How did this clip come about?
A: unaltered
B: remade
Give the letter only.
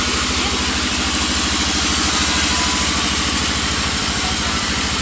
A